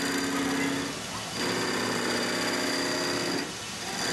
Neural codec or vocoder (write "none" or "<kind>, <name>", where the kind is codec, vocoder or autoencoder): none